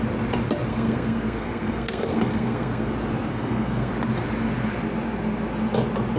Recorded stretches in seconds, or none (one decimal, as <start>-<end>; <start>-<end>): 0.0-0.7; 2.9-3.3; 3.9-6.2